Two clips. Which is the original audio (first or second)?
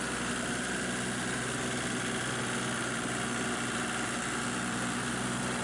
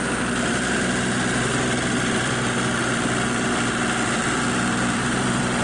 first